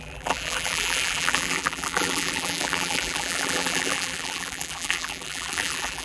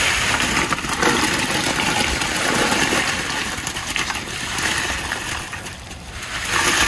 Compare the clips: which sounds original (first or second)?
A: second